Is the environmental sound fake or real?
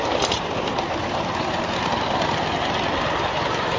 real